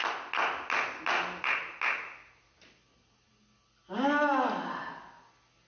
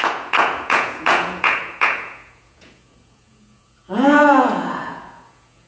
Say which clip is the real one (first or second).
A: first